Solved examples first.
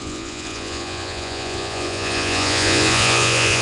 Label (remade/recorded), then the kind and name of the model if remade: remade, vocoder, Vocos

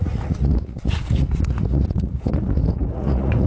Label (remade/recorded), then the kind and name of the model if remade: remade, vocoder, Vocos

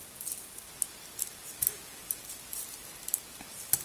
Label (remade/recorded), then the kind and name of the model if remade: recorded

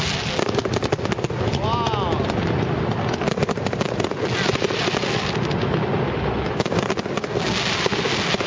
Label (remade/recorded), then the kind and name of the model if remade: recorded